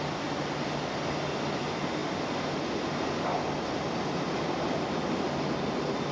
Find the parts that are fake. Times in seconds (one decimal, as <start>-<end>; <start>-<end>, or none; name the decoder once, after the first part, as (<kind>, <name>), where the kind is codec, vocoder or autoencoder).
none